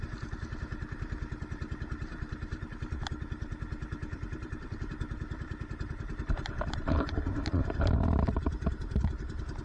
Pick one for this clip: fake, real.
fake